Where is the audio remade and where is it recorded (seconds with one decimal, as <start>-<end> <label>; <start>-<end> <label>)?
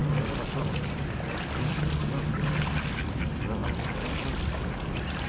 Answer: 0.0-5.3 recorded